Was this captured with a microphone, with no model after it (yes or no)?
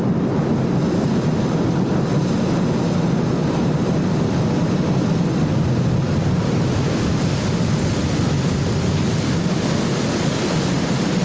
yes